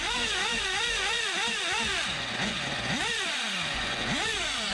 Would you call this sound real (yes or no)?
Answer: no